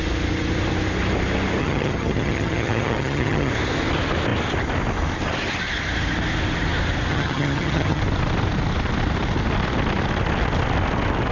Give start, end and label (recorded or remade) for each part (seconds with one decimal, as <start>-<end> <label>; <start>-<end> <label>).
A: 0.0-1.6 recorded; 1.6-3.5 remade; 3.5-7.1 recorded; 7.1-8.0 remade; 8.0-11.3 recorded